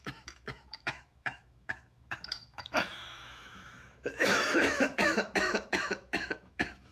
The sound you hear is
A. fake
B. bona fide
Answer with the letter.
A